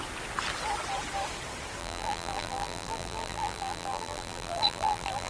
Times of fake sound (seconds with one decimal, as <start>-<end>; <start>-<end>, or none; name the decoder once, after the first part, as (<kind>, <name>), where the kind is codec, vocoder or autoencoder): 1.8-5.3 (vocoder, BigVGAN v2)